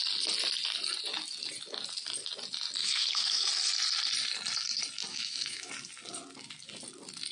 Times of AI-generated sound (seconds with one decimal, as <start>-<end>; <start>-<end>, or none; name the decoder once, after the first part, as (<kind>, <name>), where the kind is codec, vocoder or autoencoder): 2.8-3.5 (autoencoder, DAC-VAE); 5.1-5.7